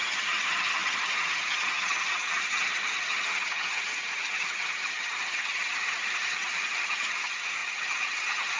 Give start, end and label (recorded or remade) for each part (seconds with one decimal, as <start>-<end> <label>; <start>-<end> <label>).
0.0-8.6 remade